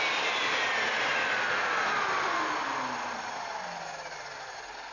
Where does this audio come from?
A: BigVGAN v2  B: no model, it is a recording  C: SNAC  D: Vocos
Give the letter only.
B